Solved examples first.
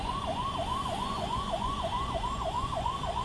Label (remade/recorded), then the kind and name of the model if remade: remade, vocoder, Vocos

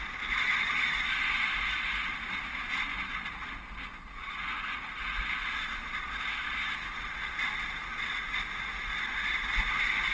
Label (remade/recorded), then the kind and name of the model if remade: recorded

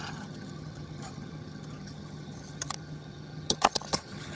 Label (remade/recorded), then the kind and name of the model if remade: remade, vocoder, HiFi-GAN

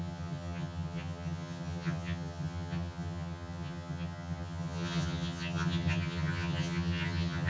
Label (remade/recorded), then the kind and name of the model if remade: remade, vocoder, HiFi-GAN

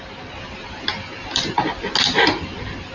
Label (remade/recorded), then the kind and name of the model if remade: recorded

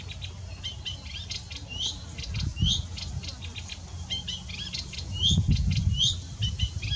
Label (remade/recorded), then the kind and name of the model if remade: recorded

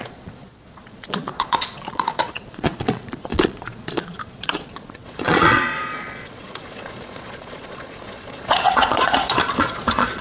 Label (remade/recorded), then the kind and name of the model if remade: remade, vocoder, Vocos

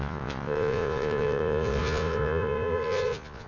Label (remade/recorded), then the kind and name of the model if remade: remade, vocoder, Vocos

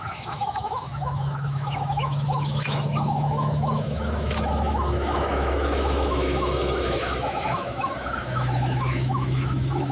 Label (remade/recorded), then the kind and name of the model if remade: remade, autoencoder, DAC-VAE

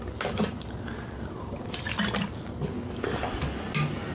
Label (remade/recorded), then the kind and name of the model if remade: recorded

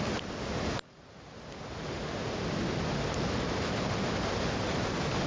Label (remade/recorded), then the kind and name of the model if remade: recorded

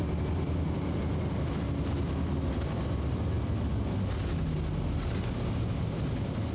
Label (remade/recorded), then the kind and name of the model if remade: recorded